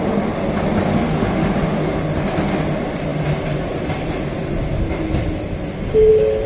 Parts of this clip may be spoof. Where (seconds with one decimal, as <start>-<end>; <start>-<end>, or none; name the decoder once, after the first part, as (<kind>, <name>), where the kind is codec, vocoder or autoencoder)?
0.9-1.5 (autoencoder, DAC-VAE)